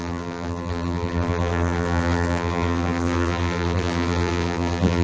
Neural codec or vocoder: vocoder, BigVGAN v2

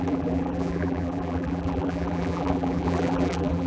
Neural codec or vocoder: vocoder, BigVGAN v2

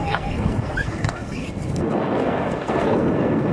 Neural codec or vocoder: codec, SNAC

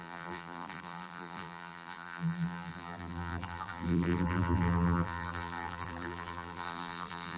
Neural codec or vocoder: vocoder, BigVGAN v2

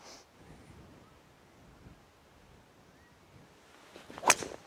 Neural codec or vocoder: none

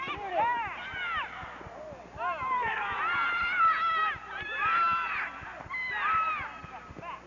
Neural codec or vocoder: none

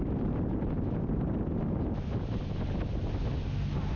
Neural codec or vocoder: none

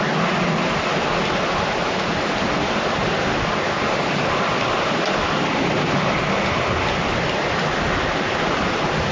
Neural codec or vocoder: none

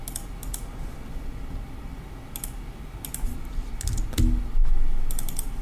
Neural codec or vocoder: none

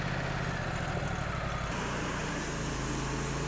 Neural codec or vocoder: none